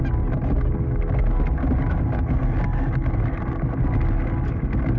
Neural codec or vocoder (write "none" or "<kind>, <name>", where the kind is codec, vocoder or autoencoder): none